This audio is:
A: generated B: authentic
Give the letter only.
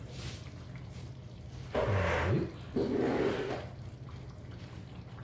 B